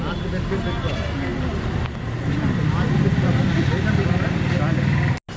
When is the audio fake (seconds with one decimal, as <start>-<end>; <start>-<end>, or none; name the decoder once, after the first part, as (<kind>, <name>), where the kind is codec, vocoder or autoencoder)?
none